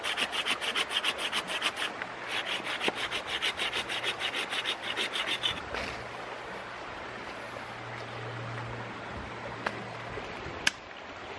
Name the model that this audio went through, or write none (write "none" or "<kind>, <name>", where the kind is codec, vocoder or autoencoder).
none